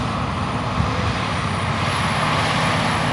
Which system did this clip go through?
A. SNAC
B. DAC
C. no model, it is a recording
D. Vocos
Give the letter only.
C